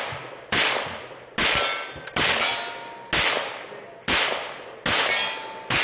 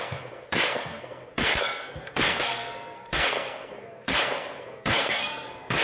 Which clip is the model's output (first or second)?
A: second